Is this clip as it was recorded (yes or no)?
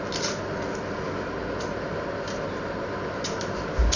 yes